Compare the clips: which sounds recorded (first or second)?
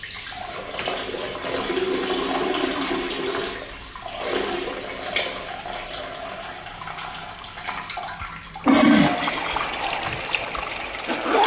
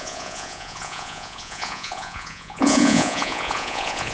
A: first